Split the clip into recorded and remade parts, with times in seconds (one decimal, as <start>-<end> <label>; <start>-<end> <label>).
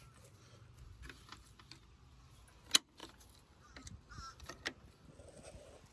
0.0-5.9 recorded